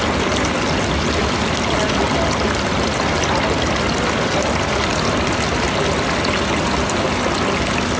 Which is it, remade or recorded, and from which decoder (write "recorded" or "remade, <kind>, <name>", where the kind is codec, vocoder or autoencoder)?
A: recorded